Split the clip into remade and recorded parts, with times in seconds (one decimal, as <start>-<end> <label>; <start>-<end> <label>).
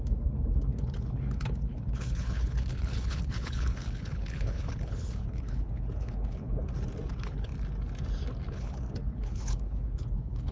0.0-6.6 remade; 6.6-7.1 recorded; 7.1-7.5 remade; 7.5-8.5 recorded; 8.5-10.5 remade